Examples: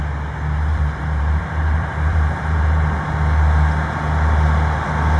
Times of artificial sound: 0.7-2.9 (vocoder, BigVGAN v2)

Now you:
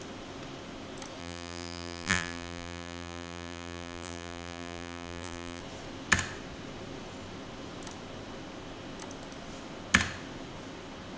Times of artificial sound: 1.2-5.6 (vocoder, BigVGAN v2)

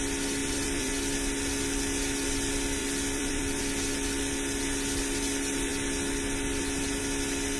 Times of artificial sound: 0.4-0.9 (vocoder, BigVGAN v2); 2.8-3.6

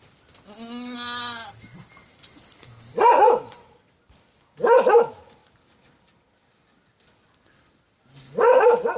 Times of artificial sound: 2.0-3.8 (vocoder, BigVGAN v2)

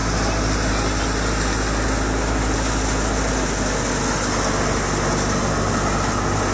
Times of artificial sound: none

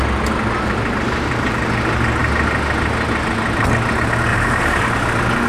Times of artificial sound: 4.3-4.9 (vocoder, BigVGAN v2)

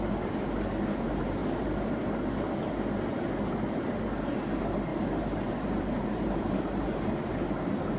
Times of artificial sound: 1.4-2.1 (vocoder, BigVGAN v2); 4.9-7.3

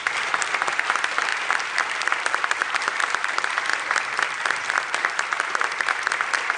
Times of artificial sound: 1.3-3.3 (vocoder, BigVGAN v2)